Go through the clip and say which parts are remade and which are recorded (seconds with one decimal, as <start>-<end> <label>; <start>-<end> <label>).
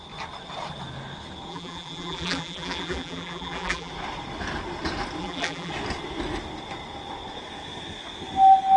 0.0-1.5 recorded; 1.5-3.9 remade; 3.9-5.2 recorded; 5.2-5.7 remade; 5.7-8.8 recorded